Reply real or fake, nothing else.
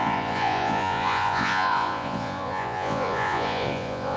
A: fake